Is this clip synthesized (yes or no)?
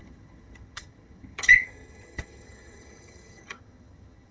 yes